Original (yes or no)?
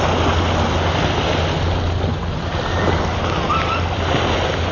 yes